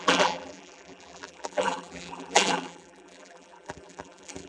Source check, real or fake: fake